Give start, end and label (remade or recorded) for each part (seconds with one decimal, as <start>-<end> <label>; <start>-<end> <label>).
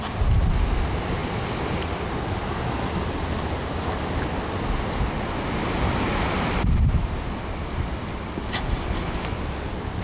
0.0-10.0 recorded